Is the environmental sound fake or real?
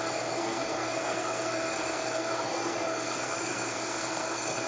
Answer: fake